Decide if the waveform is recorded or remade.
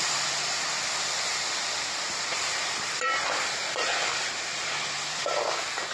remade